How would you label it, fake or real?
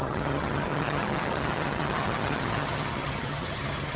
fake